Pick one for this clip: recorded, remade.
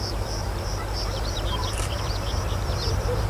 remade